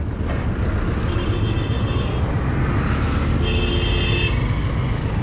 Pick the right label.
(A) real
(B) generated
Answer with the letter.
A